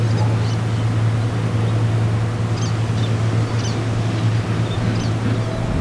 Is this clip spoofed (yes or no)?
no